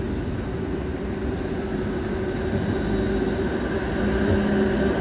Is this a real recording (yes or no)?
yes